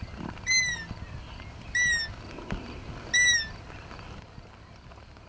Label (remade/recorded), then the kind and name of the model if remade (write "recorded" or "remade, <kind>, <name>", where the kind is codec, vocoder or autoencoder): recorded